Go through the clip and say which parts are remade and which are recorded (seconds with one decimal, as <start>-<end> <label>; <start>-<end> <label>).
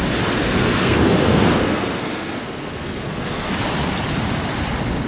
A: 0.0-0.4 recorded; 0.4-3.5 remade; 3.5-5.1 recorded